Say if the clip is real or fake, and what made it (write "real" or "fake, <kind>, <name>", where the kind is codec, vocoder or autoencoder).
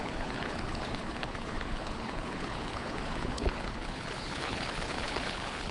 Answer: fake, codec, HILCodec